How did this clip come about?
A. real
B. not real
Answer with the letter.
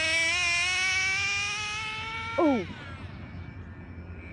A